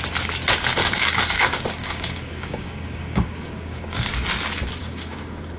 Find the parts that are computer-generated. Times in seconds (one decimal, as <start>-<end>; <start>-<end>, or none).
0.8-4.1; 4.8-5.6